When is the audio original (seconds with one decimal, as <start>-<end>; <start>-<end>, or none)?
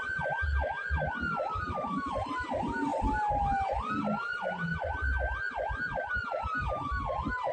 0.0-7.5